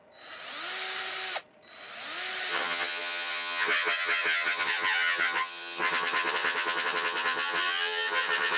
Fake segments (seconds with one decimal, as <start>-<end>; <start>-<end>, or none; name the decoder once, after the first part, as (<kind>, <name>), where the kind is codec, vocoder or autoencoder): 2.5-8.6 (vocoder, HiFi-GAN)